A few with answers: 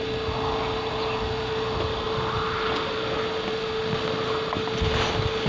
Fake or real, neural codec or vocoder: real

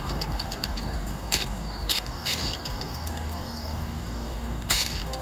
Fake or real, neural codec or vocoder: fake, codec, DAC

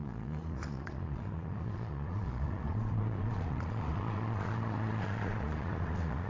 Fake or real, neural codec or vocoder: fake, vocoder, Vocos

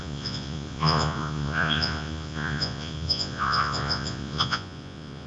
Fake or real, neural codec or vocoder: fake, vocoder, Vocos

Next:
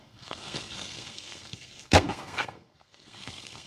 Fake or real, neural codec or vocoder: fake, codec, SNAC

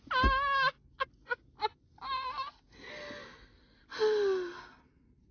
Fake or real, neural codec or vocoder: real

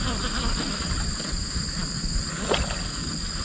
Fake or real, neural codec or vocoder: real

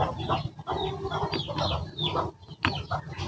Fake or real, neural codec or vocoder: real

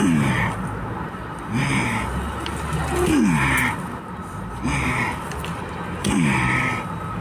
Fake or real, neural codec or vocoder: real